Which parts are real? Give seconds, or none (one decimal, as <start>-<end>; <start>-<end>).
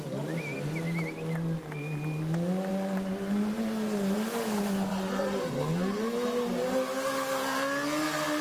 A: 0.0-4.9; 5.5-8.4